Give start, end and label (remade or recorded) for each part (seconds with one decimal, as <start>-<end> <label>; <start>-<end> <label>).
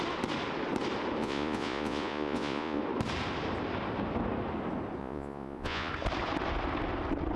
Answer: 0.0-1.2 recorded; 1.2-2.8 remade; 2.8-5.0 recorded; 5.0-5.9 remade; 5.9-7.4 recorded